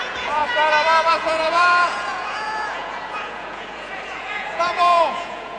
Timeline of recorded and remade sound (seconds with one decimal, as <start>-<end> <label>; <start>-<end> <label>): 0.0-0.4 remade; 0.4-1.1 recorded; 1.1-5.6 remade